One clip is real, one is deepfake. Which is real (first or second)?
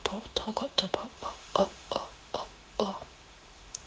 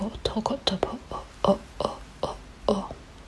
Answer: second